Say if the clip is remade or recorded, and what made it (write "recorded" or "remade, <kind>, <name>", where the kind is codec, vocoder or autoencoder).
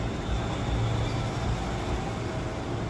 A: recorded